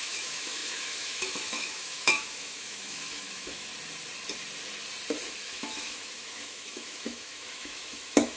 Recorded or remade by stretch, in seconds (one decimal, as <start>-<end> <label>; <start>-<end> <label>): 0.0-3.7 remade; 3.7-5.5 recorded; 5.5-8.4 remade